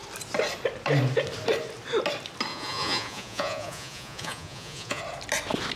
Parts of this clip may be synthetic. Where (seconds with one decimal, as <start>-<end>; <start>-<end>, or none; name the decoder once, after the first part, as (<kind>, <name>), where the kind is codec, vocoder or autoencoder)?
2.5-5.0 (vocoder, Vocos)